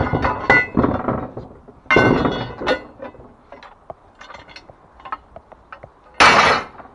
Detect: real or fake real